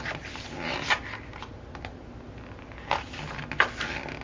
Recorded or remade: recorded